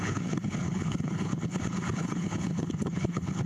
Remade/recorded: remade